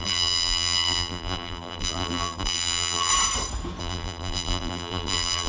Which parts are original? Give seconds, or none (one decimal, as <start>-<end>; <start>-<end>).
3.1-3.8